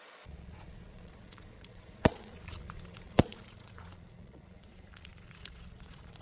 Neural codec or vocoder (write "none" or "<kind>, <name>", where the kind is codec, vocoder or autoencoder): vocoder, Vocos